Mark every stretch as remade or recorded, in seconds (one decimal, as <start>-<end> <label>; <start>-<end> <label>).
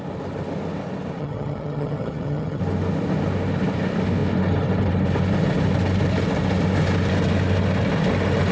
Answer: 0.0-1.2 recorded; 1.2-2.6 remade; 2.6-8.5 recorded